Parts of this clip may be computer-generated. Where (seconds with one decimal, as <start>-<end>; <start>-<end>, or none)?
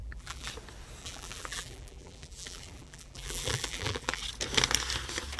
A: 0.0-0.5; 1.0-4.2